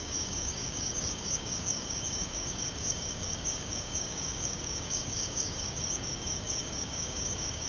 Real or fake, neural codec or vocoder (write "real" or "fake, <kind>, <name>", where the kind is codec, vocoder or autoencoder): fake, codec, DAC